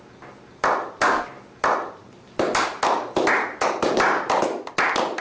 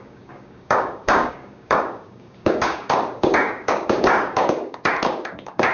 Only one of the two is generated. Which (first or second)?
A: second